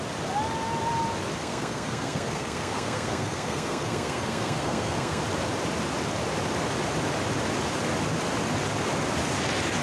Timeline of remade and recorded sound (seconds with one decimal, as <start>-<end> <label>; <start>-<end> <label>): 0.0-1.4 recorded; 1.4-5.2 remade; 5.2-9.8 recorded